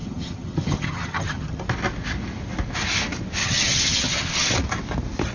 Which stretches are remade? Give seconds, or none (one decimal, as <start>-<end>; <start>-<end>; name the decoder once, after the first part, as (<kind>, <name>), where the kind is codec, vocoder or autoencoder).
0.0-1.6 (vocoder, HiFi-GAN); 3.4-4.5